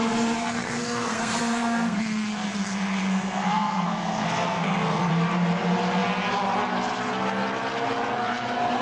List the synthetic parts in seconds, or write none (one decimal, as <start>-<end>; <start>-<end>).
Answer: 0.0-5.1